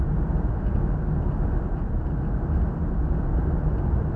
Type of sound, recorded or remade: recorded